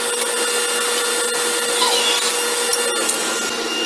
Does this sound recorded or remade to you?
recorded